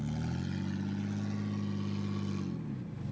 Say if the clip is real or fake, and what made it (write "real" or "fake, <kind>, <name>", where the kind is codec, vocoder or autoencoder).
real